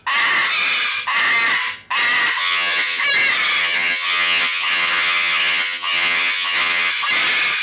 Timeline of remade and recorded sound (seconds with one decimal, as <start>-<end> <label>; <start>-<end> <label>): 0.0-2.4 recorded; 2.4-3.0 remade; 3.0-3.6 recorded; 3.6-6.9 remade; 6.9-7.6 recorded